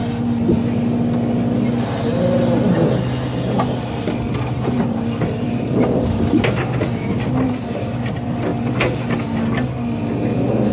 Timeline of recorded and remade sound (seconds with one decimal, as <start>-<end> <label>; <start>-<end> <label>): 0.0-4.3 recorded; 4.3-8.5 remade; 8.5-10.7 recorded